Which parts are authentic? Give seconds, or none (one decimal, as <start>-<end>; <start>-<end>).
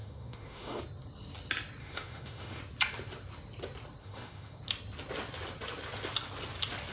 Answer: 0.8-1.8; 2.6-4.0; 4.6-6.9